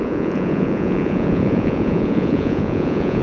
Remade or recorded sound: remade